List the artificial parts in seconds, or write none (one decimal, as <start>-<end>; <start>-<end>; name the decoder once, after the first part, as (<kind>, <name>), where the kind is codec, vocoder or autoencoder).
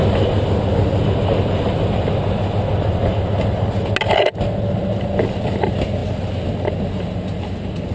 none